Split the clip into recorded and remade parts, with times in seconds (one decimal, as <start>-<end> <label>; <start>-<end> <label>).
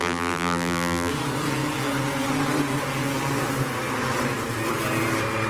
0.0-1.1 remade; 1.1-5.5 recorded